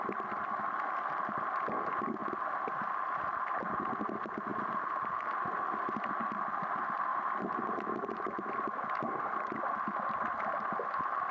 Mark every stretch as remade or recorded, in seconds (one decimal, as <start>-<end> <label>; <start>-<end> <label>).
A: 0.0-4.5 recorded; 4.5-6.3 remade; 6.3-11.3 recorded